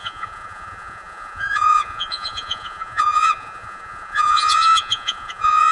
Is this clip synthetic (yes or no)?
yes